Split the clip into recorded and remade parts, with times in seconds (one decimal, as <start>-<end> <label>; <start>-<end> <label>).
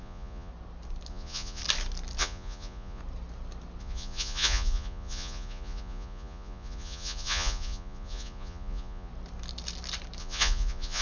0.0-0.5 remade; 0.5-1.1 recorded; 1.1-1.6 remade; 1.6-2.2 recorded; 2.2-3.0 remade; 3.0-3.8 recorded; 3.8-9.1 remade; 9.1-10.2 recorded; 10.2-11.0 remade